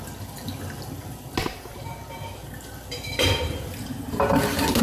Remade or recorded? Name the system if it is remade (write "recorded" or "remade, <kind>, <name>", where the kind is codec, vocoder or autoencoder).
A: recorded